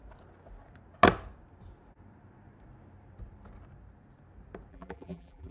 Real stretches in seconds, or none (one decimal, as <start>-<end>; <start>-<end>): 0.0-4.7